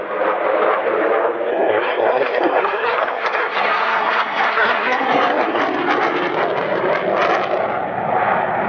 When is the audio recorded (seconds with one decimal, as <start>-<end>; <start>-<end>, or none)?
0.0-1.5; 5.6-8.7